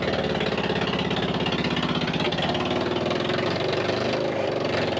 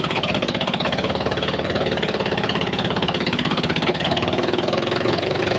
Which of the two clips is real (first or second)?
first